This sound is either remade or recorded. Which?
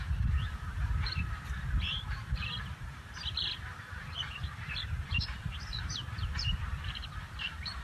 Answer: remade